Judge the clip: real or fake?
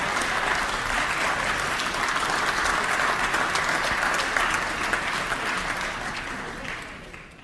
real